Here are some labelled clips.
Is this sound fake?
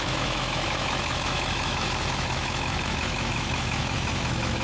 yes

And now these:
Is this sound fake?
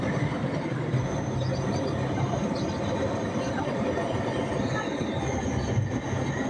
no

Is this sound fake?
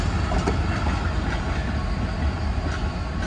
no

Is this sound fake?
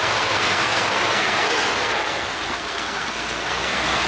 yes